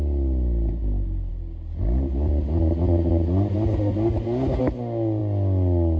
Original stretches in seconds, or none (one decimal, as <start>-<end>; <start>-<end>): 0.0-6.0